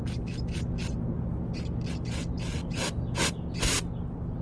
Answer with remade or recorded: recorded